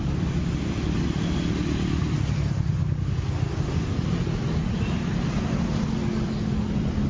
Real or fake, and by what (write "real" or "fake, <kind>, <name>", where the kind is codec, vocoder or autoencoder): real